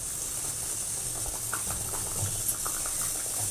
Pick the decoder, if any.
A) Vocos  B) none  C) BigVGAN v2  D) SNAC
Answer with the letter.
B